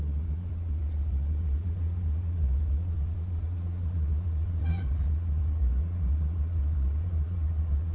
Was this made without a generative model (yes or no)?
no